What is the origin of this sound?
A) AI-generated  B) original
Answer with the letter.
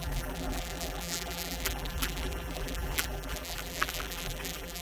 A